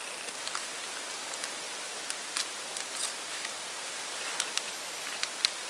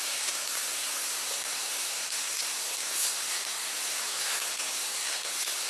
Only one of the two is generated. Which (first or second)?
second